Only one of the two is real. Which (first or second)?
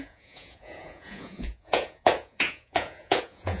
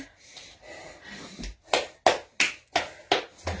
second